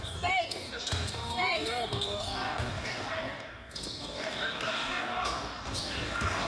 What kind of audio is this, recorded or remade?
remade